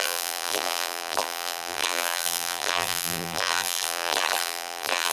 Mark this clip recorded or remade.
remade